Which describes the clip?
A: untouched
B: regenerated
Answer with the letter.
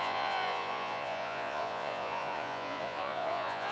B